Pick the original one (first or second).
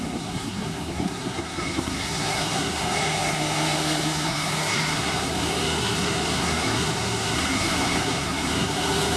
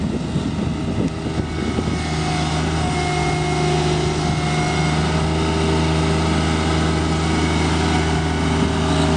second